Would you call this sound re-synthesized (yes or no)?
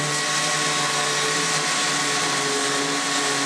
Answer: no